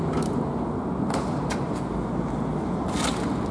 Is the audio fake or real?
real